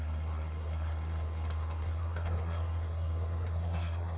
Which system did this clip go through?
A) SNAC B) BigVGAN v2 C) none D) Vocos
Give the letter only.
A